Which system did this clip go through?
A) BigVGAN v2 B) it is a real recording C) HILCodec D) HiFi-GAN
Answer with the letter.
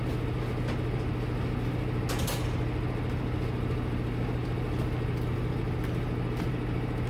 B